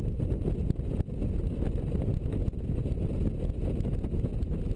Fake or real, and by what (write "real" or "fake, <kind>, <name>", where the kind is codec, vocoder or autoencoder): real